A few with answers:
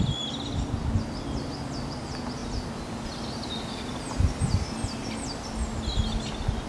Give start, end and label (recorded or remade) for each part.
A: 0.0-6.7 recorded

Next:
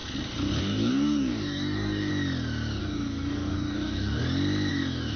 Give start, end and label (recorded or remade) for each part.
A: 0.0-0.6 recorded; 0.6-2.1 remade; 2.1-2.8 recorded; 2.8-4.2 remade; 4.2-4.7 recorded; 4.7-5.2 remade

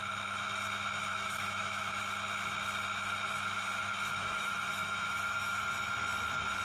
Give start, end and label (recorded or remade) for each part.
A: 0.0-1.1 recorded; 1.1-2.0 remade; 2.0-4.2 recorded; 4.2-5.6 remade; 5.6-6.6 recorded

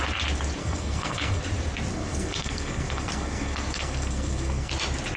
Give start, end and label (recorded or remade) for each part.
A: 0.0-0.6 recorded; 0.6-1.4 remade; 1.4-1.9 recorded; 1.9-4.7 remade; 4.7-5.2 recorded

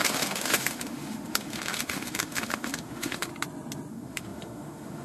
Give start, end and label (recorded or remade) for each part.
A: 0.0-3.3 remade; 3.3-3.9 recorded; 3.9-5.0 remade

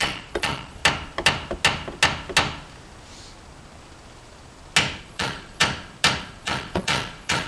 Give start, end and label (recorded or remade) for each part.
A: 0.0-0.8 remade; 0.8-5.0 recorded; 5.0-5.6 remade; 5.6-6.2 recorded; 6.2-7.5 remade

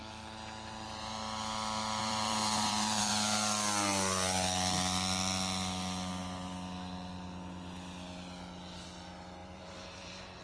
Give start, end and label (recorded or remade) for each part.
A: 0.0-2.0 recorded; 2.0-3.1 remade; 3.1-9.4 recorded; 9.4-10.4 remade